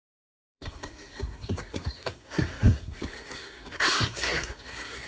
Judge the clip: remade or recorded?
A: remade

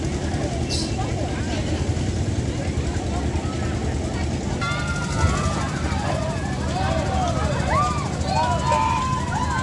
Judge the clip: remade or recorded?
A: recorded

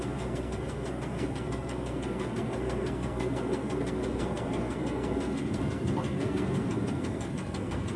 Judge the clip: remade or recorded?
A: remade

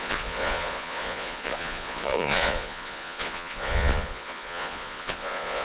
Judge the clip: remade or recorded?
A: remade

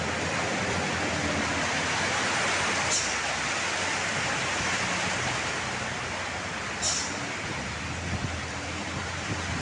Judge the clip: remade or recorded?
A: recorded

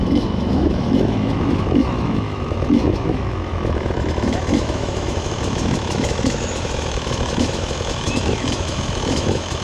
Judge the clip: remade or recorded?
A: remade